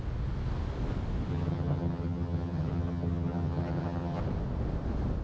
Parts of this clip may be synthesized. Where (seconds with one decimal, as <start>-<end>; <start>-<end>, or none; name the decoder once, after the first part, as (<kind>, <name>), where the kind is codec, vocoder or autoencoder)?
1.3-4.2 (vocoder, HiFi-GAN)